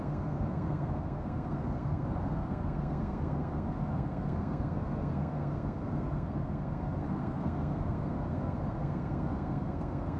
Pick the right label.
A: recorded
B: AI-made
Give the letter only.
B